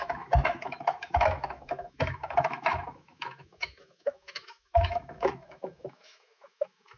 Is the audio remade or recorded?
remade